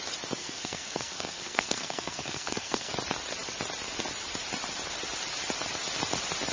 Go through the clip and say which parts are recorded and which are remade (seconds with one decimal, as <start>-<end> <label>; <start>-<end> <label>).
0.0-0.4 recorded; 0.4-2.9 remade; 2.9-6.5 recorded